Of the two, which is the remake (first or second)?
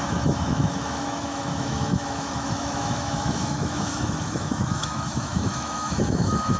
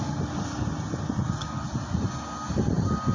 first